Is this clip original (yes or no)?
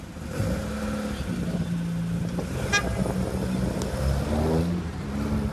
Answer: yes